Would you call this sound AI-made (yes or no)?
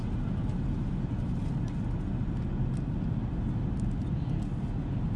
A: no